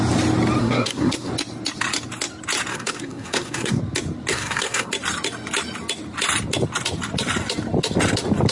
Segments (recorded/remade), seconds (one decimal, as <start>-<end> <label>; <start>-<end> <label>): 0.0-0.6 recorded; 0.6-1.3 remade; 1.3-2.7 recorded; 2.7-3.8 remade; 3.8-4.3 recorded; 4.3-4.9 remade; 4.9-8.5 recorded